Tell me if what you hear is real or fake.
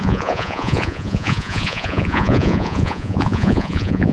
fake